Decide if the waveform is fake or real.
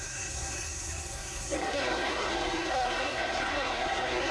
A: fake